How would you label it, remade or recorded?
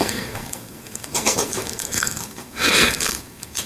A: remade